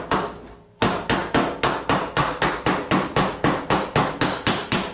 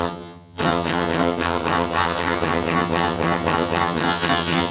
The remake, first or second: second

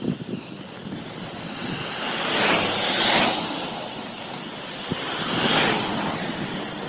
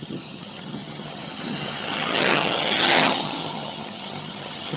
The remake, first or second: second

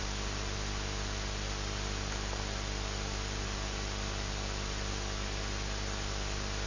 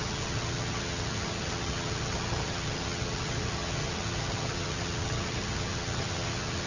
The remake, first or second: second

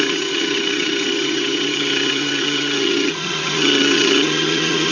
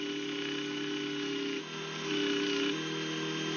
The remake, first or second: first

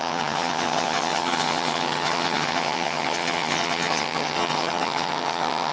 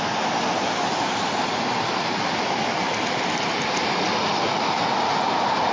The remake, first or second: first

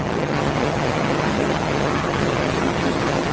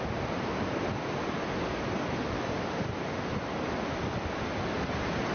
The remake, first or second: first